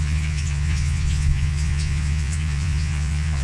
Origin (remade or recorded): remade